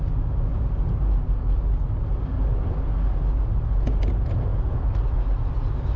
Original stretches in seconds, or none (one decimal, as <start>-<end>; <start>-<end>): 0.0-6.0